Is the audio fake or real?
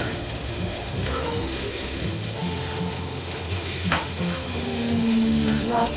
fake